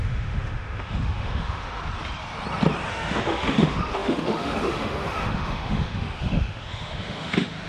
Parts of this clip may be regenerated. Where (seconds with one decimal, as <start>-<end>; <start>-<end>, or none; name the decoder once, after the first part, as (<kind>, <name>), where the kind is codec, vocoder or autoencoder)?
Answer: 0.0-1.8 (autoencoder, DAC-VAE); 2.9-7.7